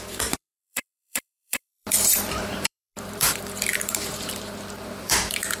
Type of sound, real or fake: fake